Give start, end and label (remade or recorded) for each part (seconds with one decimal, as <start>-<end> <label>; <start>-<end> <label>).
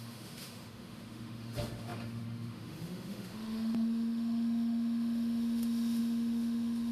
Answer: 0.0-6.9 remade